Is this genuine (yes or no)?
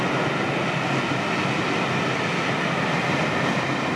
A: yes